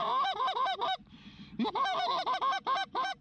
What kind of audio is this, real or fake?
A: fake